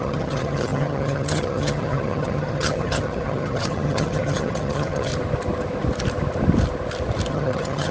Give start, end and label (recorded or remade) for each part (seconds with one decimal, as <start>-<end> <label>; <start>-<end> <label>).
0.0-5.1 remade; 5.1-7.3 recorded; 7.3-7.9 remade